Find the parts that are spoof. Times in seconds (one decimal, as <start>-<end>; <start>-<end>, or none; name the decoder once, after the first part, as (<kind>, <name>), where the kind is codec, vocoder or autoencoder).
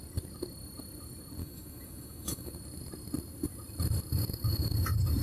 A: 1.4-2.5 (autoencoder, DAC-VAE)